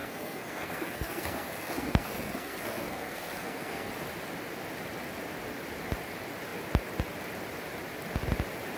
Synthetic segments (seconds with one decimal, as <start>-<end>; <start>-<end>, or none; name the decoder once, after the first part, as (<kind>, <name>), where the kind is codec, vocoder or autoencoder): 0.0-3.9 (codec, SNAC)